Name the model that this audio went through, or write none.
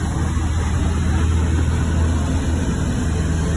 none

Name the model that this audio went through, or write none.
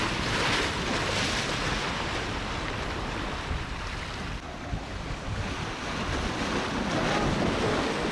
none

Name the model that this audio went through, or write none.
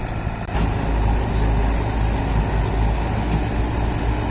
none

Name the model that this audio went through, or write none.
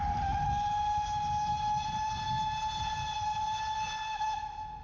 none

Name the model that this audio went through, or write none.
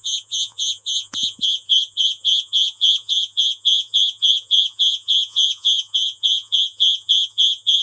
vocoder, Vocos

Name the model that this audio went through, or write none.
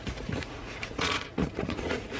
vocoder, Vocos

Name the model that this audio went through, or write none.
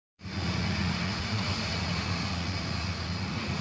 vocoder, Vocos